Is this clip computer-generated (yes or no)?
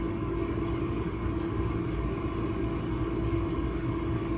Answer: yes